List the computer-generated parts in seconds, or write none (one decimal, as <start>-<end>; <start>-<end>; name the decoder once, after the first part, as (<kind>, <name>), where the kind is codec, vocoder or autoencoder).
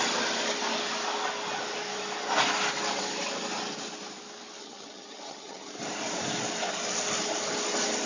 4.6-5.7 (vocoder, HiFi-GAN)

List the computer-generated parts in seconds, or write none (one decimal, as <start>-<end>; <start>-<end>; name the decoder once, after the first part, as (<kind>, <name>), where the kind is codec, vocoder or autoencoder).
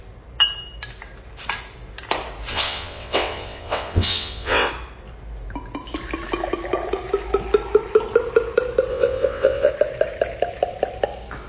2.5-4.7 (vocoder, WaveNeXt); 8.9-9.7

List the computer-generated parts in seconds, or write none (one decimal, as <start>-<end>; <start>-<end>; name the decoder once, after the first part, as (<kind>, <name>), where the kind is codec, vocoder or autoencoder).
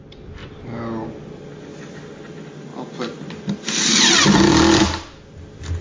none